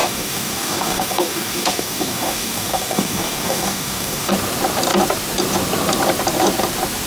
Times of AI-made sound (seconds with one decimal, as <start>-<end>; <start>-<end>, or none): 0.0-4.3